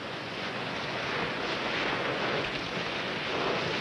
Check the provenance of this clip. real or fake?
fake